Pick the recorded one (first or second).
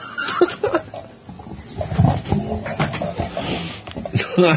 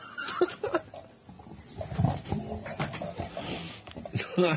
first